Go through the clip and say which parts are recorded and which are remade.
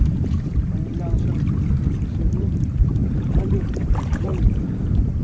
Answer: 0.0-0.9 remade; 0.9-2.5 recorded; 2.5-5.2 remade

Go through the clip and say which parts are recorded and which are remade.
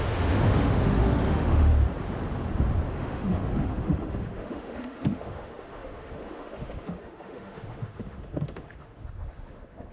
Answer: 0.0-1.7 remade; 1.7-2.9 recorded; 2.9-9.9 remade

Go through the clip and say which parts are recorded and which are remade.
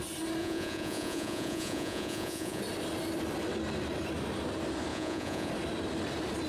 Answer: 0.0-0.4 recorded; 0.4-2.6 remade; 2.6-4.9 recorded; 4.9-5.5 remade; 5.5-6.5 recorded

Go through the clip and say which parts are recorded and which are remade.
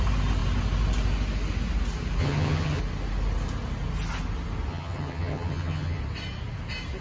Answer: 0.0-2.2 recorded; 2.2-2.8 remade; 2.8-4.7 recorded; 4.7-6.0 remade; 6.0-7.0 recorded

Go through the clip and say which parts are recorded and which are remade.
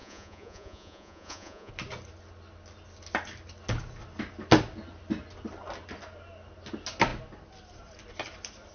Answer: 0.0-1.7 remade; 1.7-8.7 recorded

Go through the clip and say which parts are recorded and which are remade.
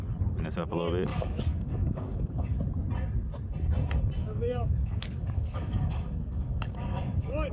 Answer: 0.0-1.1 recorded; 1.1-2.6 remade; 2.6-4.2 recorded; 4.2-7.5 remade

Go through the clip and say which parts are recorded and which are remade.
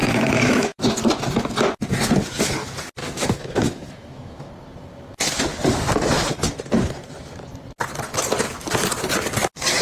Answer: 0.0-0.8 remade; 0.8-3.0 recorded; 3.0-4.5 remade; 4.5-9.8 recorded